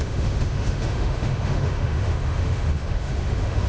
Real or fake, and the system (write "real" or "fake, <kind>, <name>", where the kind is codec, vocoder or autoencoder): fake, autoencoder, DAC-VAE